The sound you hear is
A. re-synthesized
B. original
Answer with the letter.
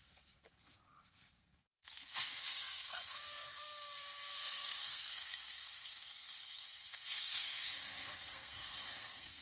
A